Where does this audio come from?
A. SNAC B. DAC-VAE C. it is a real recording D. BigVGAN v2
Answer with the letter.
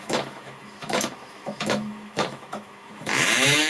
B